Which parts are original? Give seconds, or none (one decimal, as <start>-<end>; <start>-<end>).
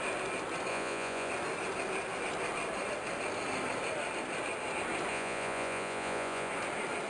0.0-0.7; 1.3-5.1; 6.5-7.1